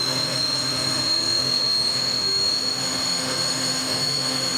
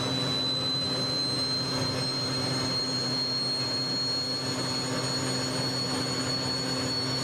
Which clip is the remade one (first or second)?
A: first